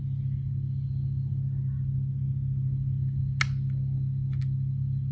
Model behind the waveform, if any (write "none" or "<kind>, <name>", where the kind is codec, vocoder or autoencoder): none